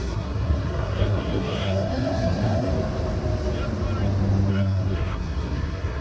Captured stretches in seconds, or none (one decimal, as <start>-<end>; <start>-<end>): 2.7-4.5